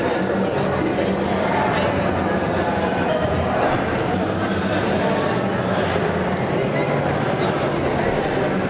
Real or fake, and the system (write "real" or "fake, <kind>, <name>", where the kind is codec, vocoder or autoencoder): real